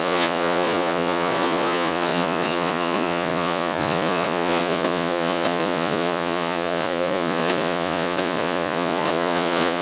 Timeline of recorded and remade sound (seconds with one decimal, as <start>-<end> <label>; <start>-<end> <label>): 0.0-9.8 remade